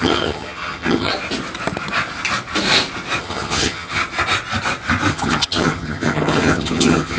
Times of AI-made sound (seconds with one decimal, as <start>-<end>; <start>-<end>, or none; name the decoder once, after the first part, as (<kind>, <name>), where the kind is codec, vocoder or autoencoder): 0.0-1.1 (vocoder, HiFi-GAN); 3.2-4.0; 5.1-7.2